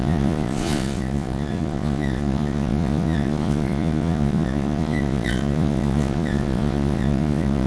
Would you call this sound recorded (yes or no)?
no